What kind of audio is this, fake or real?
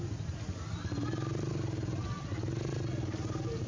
real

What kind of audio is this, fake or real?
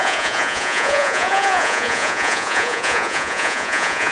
fake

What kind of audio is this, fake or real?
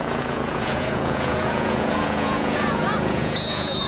fake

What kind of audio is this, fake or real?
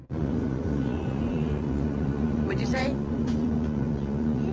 fake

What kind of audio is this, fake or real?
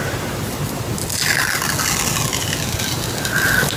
real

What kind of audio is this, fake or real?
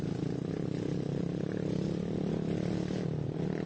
real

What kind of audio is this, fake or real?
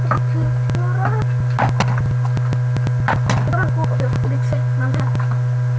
real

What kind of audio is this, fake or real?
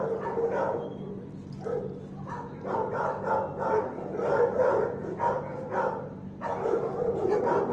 real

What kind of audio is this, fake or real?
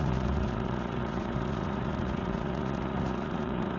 fake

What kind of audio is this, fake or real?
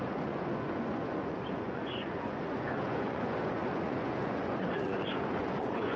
fake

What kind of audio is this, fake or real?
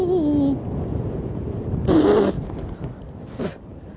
real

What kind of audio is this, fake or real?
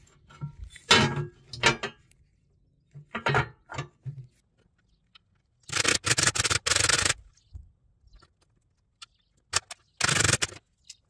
real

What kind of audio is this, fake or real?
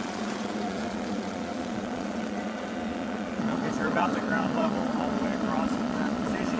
fake